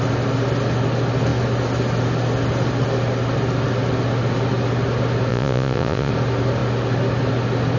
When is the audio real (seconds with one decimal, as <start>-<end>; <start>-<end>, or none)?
0.0-5.3; 6.1-7.8